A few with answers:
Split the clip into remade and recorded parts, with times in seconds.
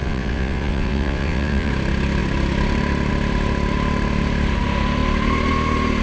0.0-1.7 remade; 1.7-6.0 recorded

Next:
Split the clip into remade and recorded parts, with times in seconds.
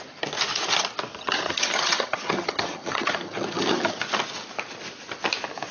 0.0-1.1 recorded; 1.1-4.0 remade; 4.0-5.7 recorded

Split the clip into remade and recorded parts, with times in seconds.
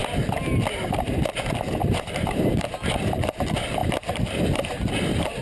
0.0-1.8 recorded; 1.8-2.7 remade; 2.7-3.8 recorded; 3.8-4.4 remade; 4.4-5.4 recorded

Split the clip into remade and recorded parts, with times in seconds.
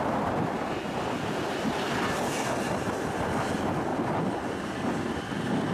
0.0-5.7 recorded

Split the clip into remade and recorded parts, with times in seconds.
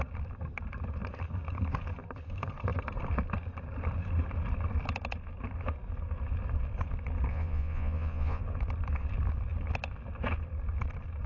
0.0-7.3 recorded; 7.3-8.4 remade; 8.4-11.3 recorded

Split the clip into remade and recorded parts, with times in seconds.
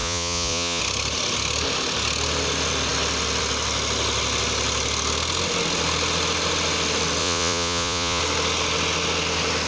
0.0-0.8 remade; 0.8-7.2 recorded; 7.2-8.2 remade; 8.2-9.7 recorded